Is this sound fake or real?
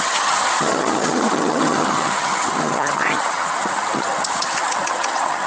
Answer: fake